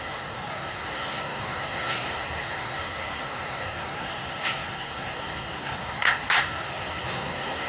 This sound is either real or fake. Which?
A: fake